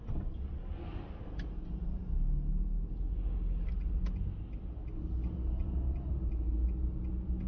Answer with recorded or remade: recorded